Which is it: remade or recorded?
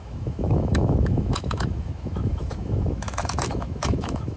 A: remade